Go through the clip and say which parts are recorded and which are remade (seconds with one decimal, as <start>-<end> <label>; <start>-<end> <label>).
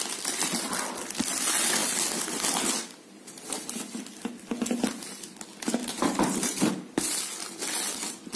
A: 0.0-5.8 recorded; 5.8-6.7 remade; 6.7-8.4 recorded